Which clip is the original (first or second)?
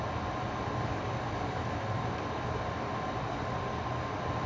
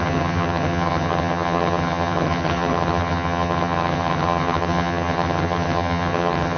first